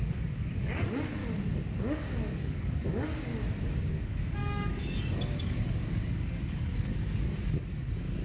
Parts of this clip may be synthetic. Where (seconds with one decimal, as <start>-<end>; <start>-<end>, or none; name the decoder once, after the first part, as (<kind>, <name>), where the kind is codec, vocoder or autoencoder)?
0.0-1.2 (codec, DAC); 1.8-3.3; 3.9-8.2